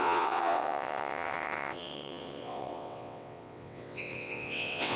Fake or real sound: fake